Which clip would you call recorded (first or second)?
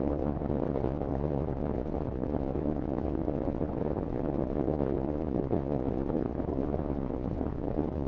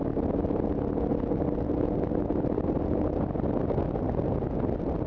second